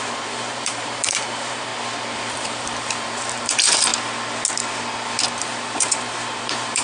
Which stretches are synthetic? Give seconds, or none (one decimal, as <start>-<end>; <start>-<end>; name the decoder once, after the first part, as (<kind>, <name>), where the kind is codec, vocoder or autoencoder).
0.0-1.7 (vocoder, BigVGAN v2); 2.3-3.9; 5.4-6.8